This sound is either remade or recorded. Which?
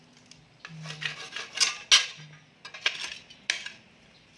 recorded